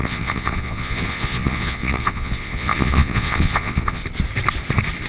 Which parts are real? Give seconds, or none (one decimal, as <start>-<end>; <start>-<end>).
4.0-5.1